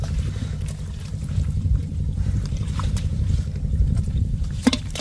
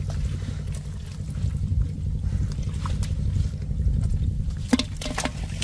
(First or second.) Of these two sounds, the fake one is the first